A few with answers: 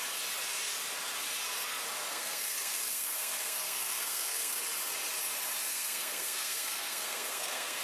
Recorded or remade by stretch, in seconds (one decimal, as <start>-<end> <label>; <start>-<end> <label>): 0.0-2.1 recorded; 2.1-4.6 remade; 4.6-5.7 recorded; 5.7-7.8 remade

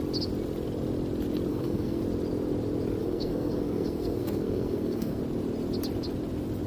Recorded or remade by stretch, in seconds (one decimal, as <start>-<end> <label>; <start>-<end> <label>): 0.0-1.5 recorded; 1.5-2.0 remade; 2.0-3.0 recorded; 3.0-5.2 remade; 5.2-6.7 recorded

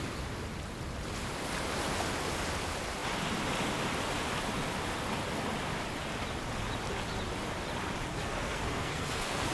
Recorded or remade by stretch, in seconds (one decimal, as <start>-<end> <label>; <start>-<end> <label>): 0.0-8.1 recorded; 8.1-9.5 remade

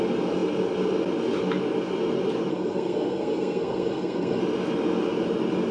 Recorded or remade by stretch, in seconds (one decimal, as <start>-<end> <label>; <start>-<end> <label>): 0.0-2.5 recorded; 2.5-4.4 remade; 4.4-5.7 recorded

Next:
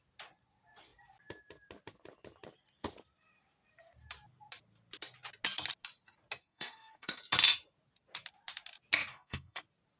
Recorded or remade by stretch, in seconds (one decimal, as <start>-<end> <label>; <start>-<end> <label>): 0.0-6.4 recorded; 6.4-7.2 remade; 7.2-9.1 recorded; 9.1-9.6 remade; 9.6-10.0 recorded

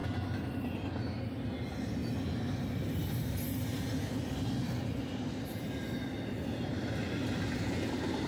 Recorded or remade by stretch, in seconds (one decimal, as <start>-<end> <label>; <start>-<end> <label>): 0.0-8.3 recorded